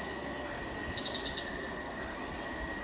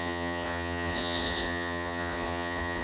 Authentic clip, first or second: first